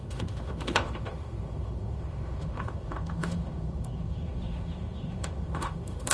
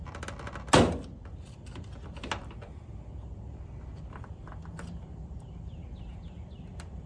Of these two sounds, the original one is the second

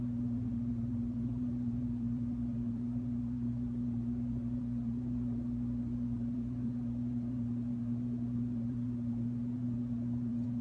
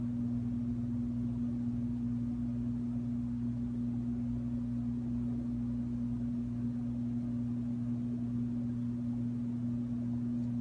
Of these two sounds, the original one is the second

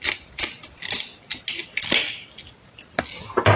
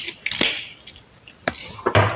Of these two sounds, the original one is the first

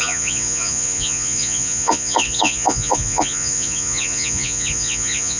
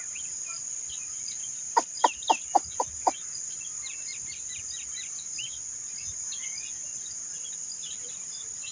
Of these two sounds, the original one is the second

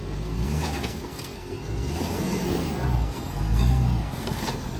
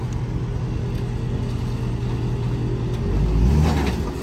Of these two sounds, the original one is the second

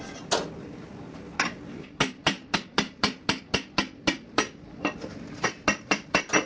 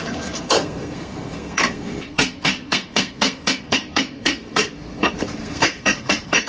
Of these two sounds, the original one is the first